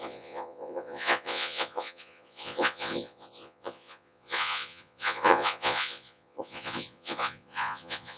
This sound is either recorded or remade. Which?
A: remade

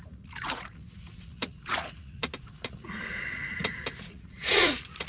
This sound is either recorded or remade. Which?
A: remade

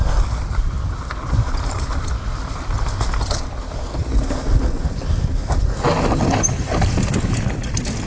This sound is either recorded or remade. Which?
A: recorded